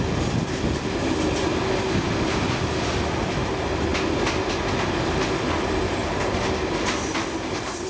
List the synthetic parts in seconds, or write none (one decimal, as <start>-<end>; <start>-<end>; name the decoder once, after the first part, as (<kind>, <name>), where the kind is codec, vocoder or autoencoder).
none